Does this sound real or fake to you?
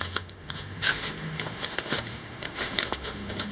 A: fake